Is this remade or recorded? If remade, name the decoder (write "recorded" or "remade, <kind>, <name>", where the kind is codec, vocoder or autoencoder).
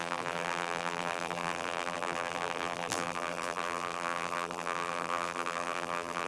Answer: remade, vocoder, BigVGAN v2